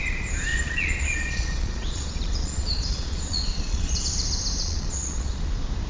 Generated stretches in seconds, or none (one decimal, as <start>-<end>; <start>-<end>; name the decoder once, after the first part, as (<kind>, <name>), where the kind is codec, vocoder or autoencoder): 0.5-4.0 (vocoder, Vocos); 4.6-5.5